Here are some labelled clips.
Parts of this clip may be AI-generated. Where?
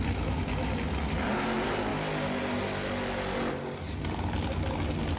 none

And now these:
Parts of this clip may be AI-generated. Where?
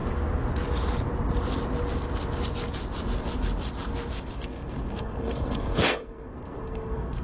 4.3-7.2 (codec, SNAC)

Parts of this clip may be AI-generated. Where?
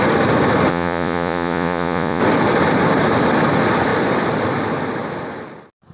0.7-2.2 (vocoder, Vocos)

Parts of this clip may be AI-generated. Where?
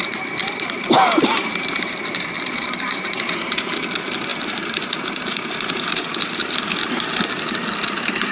1.3-3.7 (vocoder, BigVGAN v2); 4.3-6.1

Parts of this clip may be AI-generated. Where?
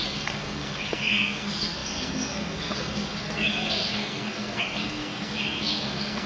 0.0-6.3 (codec, SNAC)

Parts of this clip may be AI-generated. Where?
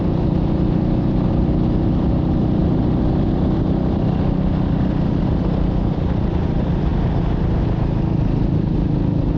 0.0-6.9 (vocoder, BigVGAN v2)